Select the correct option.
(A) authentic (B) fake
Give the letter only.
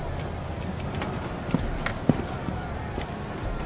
A